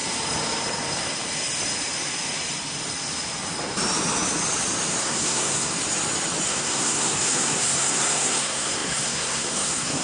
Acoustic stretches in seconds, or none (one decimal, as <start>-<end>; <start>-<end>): 0.0-5.0; 5.7-6.5